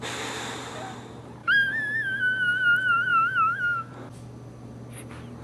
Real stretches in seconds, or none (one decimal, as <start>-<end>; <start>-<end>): 0.0-1.4; 2.2-3.1; 3.9-5.4